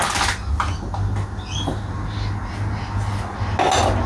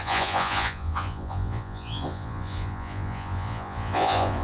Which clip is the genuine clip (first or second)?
first